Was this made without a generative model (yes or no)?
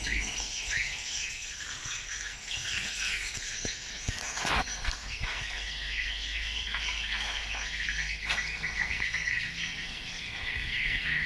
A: no